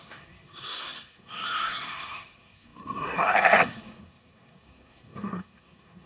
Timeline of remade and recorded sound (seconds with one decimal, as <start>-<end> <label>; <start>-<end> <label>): 0.0-6.1 remade